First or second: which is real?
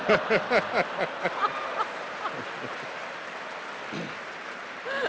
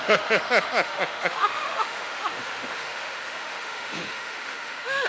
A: first